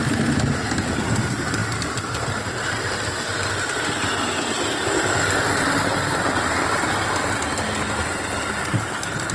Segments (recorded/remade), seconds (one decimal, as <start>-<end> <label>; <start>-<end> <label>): 0.0-9.3 recorded